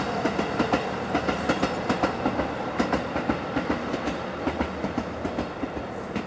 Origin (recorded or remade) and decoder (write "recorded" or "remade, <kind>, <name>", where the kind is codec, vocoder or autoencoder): recorded